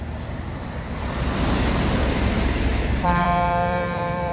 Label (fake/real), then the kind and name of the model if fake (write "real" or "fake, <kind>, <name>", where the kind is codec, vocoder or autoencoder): fake, vocoder, BigVGAN v2